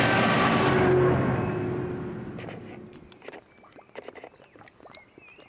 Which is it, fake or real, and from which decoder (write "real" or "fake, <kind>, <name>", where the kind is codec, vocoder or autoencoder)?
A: real